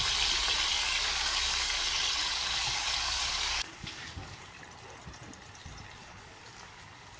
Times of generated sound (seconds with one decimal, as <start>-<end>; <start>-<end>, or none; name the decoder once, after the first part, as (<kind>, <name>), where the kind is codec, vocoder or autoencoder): 0.7-1.8 (codec, DAC); 2.2-4.6; 6.0-7.2